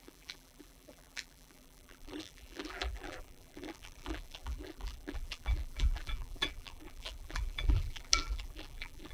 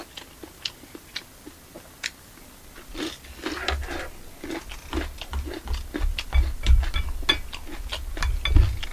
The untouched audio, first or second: second